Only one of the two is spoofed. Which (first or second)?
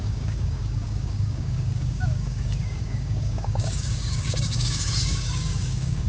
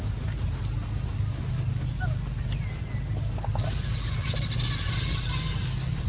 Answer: first